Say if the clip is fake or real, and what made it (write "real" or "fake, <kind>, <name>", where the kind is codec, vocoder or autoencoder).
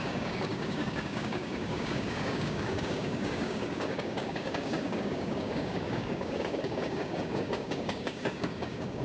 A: fake, codec, DAC